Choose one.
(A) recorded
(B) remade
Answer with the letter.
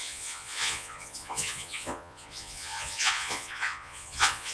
B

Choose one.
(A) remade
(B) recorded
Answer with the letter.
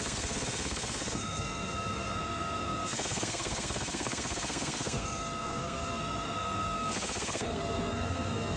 A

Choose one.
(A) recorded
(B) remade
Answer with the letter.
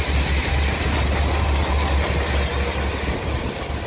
A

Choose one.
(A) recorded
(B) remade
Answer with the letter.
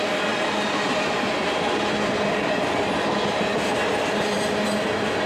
A